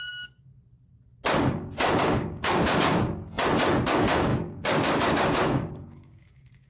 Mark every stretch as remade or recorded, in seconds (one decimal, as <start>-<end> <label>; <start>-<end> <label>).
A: 0.0-0.5 remade; 0.5-2.0 recorded; 2.0-3.0 remade; 3.0-3.8 recorded; 3.8-6.7 remade